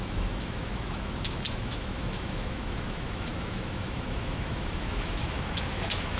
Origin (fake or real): fake